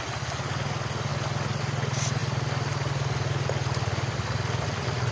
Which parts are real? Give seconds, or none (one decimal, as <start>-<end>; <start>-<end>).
0.0-5.1